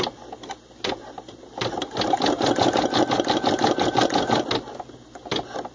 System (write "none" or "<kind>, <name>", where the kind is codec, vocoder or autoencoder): none